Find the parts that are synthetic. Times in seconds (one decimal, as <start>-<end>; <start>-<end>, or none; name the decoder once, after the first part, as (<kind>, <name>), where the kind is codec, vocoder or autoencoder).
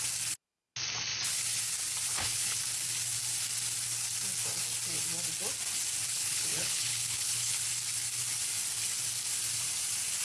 2.1-2.6 (codec, HILCodec); 6.1-7.6